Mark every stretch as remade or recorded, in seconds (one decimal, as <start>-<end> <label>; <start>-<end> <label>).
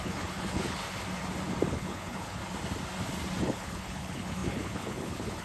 0.0-0.8 remade; 0.8-1.7 recorded; 1.7-2.4 remade; 2.4-3.4 recorded; 3.4-5.4 remade